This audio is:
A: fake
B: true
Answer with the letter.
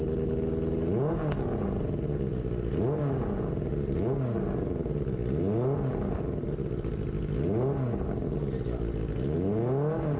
B